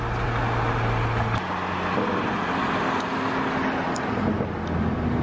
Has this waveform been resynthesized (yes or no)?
no